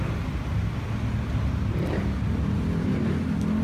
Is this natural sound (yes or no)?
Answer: yes